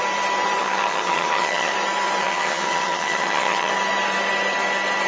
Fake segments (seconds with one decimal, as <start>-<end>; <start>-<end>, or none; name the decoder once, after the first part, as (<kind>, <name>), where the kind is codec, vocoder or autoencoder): 0.6-1.7 (vocoder, HiFi-GAN); 2.2-3.7